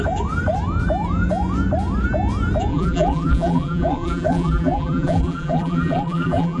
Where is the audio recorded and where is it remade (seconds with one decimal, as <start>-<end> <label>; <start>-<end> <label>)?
0.0-2.7 recorded; 2.7-6.6 remade